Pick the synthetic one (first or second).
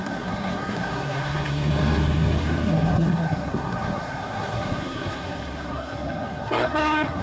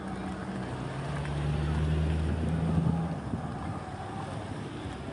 first